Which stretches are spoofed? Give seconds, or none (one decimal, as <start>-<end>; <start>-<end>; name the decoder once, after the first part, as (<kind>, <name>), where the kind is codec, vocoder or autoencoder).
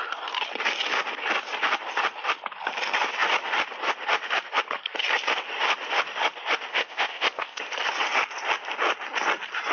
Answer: 6.7-7.6 (codec, ZipCodec)